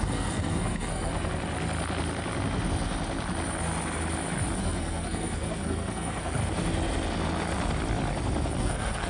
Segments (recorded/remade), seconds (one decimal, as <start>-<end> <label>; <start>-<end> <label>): 0.0-1.1 remade; 1.1-4.6 recorded; 4.6-6.4 remade; 6.4-8.6 recorded; 8.6-9.1 remade